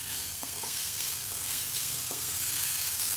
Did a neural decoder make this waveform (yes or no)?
yes